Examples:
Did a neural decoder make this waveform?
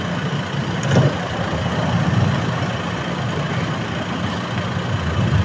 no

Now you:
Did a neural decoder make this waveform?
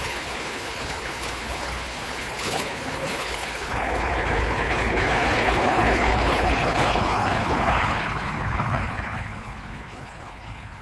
yes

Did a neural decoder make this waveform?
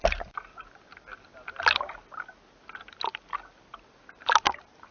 no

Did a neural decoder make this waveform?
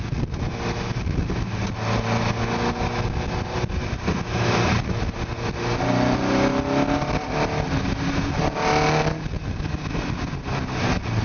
no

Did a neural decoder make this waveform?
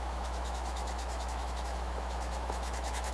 yes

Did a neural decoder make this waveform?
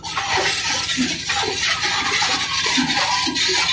no